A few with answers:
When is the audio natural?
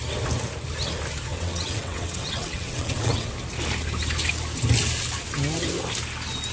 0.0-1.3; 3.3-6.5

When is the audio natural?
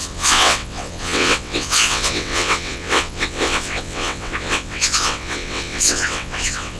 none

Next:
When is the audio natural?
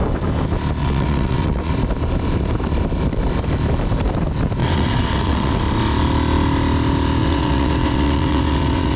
0.0-0.8; 1.7-4.6; 5.6-7.2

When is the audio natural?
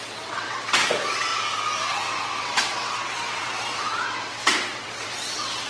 1.3-1.9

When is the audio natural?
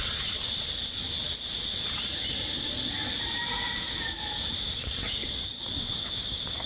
0.0-5.2; 6.0-6.7